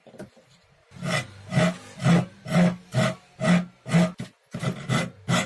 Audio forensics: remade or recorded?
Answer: recorded